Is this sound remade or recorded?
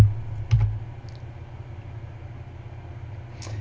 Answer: recorded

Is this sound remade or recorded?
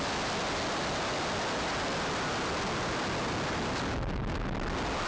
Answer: recorded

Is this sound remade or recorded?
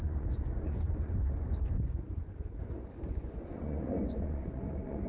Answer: remade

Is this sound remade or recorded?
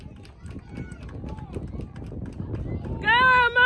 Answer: recorded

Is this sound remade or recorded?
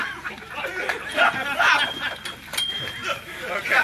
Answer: recorded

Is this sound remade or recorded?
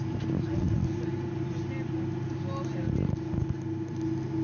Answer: recorded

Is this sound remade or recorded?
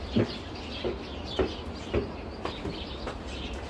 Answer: recorded